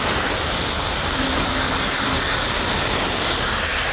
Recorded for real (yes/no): yes